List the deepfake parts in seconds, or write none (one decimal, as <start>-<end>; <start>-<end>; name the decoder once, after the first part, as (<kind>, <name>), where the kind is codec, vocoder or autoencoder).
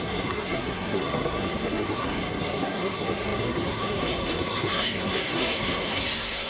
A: 0.0-6.5 (codec, SNAC)